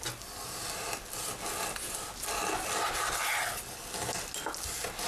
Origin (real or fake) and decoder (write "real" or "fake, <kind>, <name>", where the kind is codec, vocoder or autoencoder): real